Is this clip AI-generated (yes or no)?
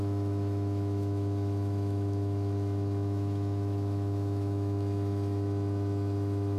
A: yes